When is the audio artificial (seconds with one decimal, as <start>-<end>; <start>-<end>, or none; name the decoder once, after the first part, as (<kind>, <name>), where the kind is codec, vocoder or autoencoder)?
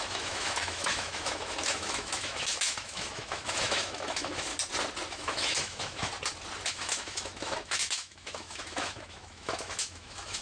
0.0-4.5 (autoencoder, DAC-VAE); 5.1-6.1; 6.7-10.4